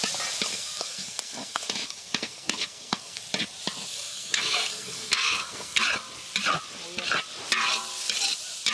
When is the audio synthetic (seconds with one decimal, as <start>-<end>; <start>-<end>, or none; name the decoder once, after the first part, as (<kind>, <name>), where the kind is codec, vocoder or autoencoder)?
0.5-3.2 (codec, SNAC); 3.9-5.8